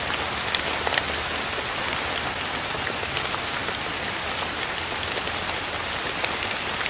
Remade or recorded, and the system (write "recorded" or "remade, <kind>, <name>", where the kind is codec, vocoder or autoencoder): recorded